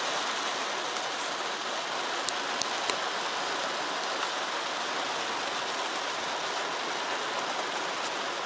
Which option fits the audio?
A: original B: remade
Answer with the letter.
A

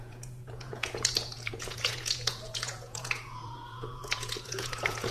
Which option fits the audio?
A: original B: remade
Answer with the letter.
B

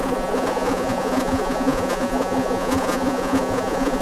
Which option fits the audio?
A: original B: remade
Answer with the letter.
B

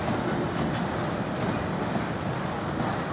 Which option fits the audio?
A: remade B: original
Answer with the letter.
B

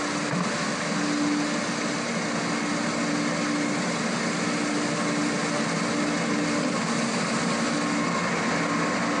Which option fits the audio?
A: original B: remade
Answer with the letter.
A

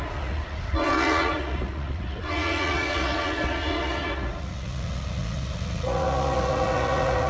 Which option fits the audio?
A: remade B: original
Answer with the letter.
A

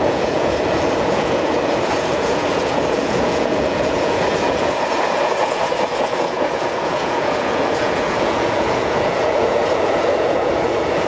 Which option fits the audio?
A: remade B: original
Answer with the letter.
A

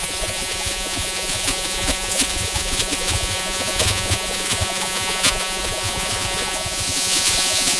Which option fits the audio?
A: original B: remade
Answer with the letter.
B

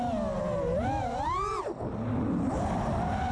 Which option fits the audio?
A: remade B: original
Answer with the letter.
B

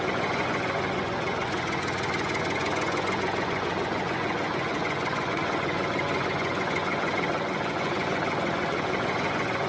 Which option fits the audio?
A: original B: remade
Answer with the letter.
B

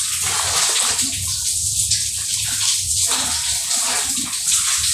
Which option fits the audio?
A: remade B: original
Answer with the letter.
B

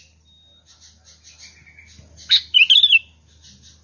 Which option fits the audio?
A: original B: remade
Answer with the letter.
A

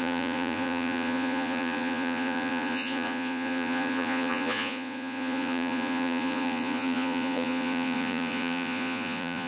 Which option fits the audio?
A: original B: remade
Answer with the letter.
B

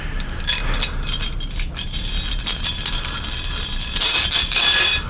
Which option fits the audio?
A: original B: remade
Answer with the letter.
A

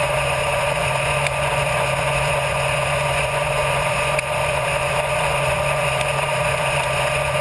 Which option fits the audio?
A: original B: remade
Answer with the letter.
B